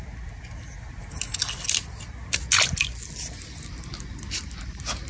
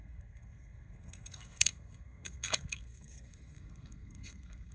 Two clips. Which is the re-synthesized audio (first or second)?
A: second